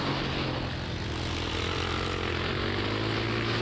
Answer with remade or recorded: recorded